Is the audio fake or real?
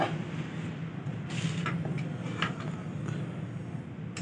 real